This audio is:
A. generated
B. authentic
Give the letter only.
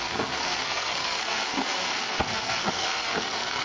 A